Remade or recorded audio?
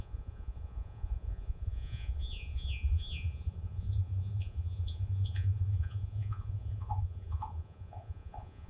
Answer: remade